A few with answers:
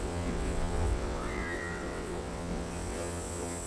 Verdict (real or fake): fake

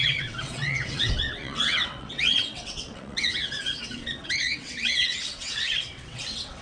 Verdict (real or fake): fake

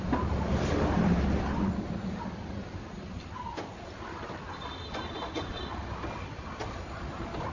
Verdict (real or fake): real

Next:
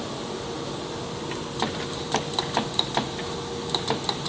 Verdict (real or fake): real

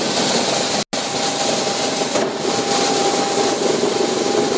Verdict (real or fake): real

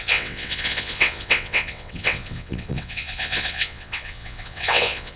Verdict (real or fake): fake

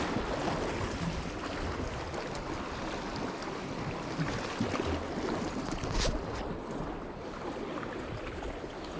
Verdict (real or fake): real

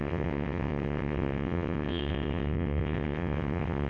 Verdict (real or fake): fake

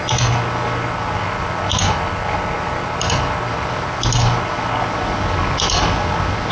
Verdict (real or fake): real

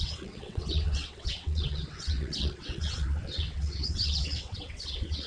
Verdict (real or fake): fake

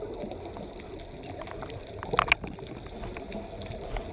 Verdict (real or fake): real